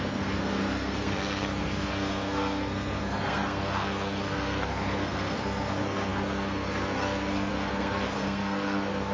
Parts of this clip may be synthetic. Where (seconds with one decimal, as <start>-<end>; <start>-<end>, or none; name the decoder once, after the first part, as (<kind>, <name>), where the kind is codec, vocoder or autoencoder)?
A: 0.0-9.1 (codec, SNAC)